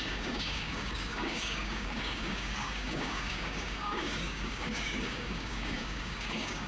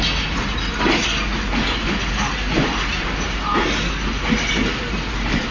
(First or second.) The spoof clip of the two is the first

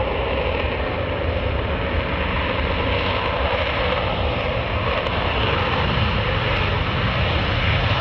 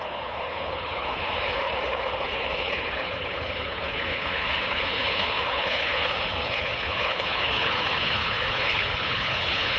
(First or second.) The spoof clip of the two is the second